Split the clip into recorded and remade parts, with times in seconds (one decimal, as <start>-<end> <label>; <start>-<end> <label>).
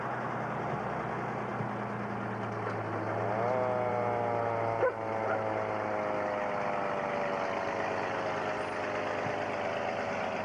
0.0-10.4 recorded